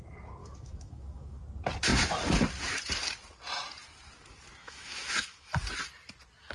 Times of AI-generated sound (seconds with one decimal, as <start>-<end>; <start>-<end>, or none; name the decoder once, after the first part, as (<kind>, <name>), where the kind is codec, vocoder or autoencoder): 0.4-1.4 (autoencoder, DAC-VAE); 4.6-5.5